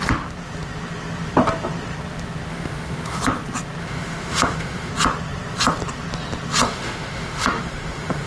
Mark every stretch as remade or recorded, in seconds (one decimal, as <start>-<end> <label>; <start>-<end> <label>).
0.0-2.5 recorded; 2.5-3.2 remade; 3.2-3.8 recorded; 3.8-4.9 remade; 4.9-6.6 recorded; 6.6-8.3 remade